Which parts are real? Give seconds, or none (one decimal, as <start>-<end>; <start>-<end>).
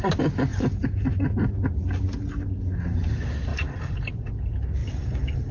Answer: 0.0-0.5; 1.3-3.5; 4.3-4.8